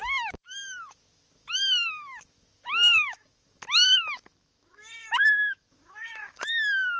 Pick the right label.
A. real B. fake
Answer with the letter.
B